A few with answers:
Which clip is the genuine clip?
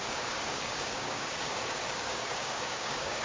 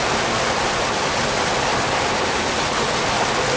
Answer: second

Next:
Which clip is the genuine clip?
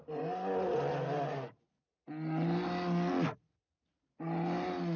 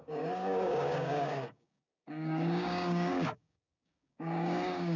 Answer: first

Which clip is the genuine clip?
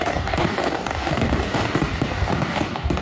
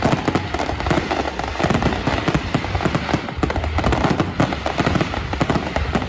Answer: second